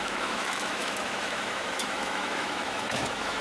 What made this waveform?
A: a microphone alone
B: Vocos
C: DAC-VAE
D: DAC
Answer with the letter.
C